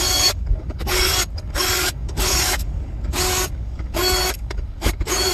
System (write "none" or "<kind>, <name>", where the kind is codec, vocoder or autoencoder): codec, DAC